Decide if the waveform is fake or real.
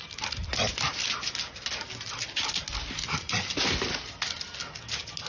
real